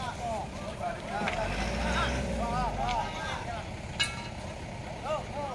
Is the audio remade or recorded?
recorded